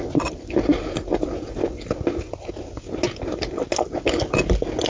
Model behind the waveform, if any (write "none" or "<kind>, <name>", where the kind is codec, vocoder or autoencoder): none